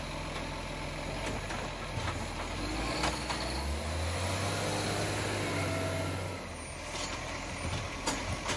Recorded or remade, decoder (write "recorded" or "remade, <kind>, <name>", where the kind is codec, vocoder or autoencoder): recorded